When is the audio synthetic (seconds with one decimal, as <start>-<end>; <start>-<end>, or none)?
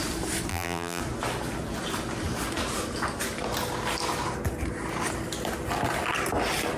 0.5-1.0